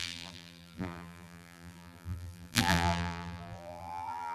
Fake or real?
fake